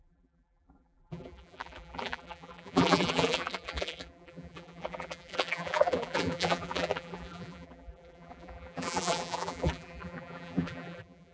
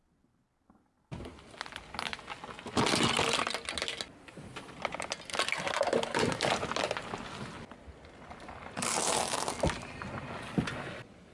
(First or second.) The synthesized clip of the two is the first